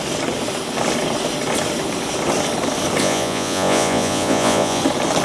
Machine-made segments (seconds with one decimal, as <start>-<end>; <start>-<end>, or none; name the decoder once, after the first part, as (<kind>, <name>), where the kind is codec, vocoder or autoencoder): 3.0-4.8 (vocoder, Vocos)